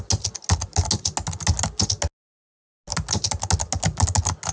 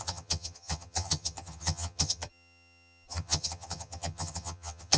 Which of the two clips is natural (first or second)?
first